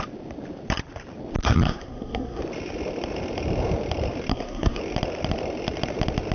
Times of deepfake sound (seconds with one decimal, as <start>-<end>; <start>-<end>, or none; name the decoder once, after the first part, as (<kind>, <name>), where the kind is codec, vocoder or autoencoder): 1.4-2.4 (codec, SNAC); 4.3-4.8